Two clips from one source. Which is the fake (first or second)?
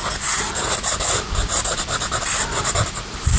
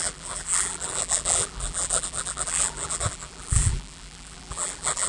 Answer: second